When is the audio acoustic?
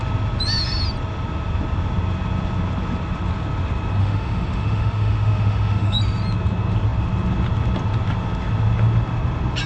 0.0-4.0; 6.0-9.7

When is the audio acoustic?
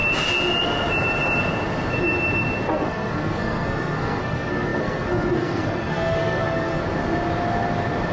0.0-2.7; 6.8-8.1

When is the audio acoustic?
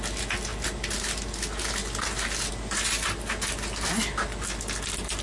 0.0-5.2